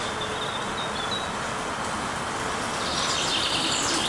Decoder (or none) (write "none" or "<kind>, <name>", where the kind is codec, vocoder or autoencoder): none